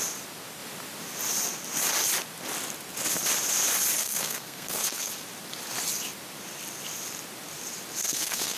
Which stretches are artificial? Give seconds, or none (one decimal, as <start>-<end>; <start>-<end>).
4.0-5.1; 8.0-8.6